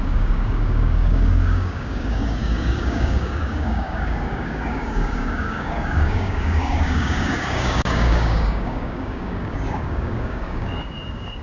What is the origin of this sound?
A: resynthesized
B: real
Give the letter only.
A